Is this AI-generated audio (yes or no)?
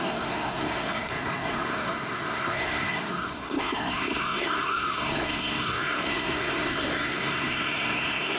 yes